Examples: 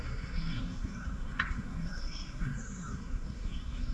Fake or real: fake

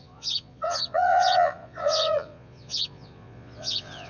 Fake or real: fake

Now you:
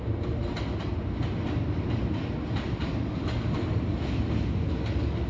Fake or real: real